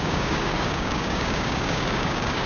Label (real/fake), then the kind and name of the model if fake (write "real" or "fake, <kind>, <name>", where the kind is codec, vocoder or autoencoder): fake, codec, DAC